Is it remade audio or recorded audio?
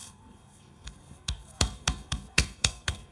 remade